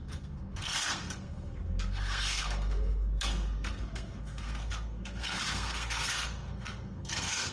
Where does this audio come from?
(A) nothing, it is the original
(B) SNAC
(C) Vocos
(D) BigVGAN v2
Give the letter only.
B